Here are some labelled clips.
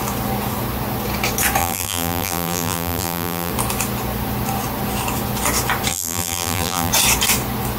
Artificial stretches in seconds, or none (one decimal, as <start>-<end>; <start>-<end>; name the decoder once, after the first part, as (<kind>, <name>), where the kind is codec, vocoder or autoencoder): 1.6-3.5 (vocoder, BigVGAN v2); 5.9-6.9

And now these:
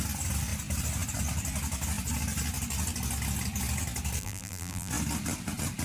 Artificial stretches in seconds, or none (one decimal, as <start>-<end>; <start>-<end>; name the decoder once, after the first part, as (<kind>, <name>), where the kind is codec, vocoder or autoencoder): 4.2-4.9 (vocoder, BigVGAN v2)

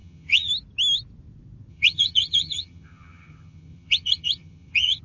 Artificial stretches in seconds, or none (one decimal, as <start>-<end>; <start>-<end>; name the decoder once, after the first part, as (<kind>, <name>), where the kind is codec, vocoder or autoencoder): 0.0-0.5 (vocoder, HiFi-GAN); 1.7-5.0

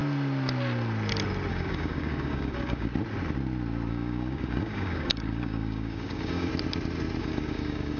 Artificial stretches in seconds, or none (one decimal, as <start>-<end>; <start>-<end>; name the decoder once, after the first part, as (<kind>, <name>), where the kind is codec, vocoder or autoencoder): 1.5-2.9 (codec, DAC); 3.9-6.5; 7.2-8.0

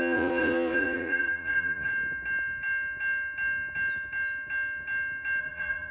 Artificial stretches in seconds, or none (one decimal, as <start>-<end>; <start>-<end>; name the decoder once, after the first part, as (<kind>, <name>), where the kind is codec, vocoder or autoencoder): 0.0-1.9 (vocoder, Vocos); 5.4-5.9

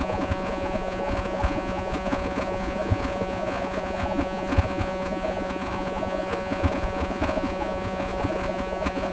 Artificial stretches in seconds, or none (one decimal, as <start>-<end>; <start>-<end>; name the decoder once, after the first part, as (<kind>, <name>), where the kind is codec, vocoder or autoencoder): 0.0-9.1 (vocoder, Vocos)

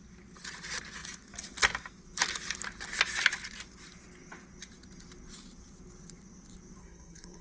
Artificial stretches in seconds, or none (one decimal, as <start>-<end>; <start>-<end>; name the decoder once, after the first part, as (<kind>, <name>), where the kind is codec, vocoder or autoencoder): 6.8-7.4 (codec, SNAC)

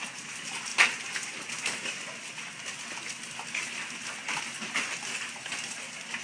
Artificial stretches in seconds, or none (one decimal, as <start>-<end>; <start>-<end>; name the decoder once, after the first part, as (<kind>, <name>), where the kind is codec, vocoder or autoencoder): none